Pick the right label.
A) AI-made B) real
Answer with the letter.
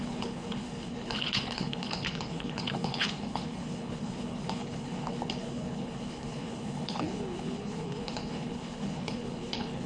A